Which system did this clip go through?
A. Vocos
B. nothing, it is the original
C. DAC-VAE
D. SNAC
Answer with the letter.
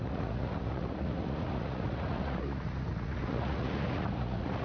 A